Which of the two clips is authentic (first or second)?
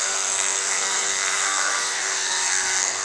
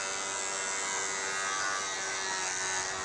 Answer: second